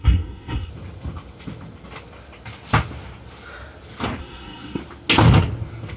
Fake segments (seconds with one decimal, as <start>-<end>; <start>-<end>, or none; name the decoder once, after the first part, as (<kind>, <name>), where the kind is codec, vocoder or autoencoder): 0.0-0.7 (codec, SNAC); 4.2-4.8